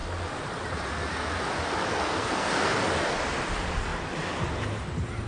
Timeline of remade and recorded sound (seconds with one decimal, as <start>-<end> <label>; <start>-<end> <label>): 0.0-1.9 recorded; 1.9-2.8 remade; 2.8-5.3 recorded